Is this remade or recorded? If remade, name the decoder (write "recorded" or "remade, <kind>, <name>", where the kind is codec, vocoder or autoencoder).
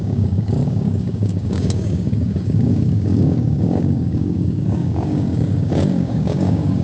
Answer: remade, codec, DAC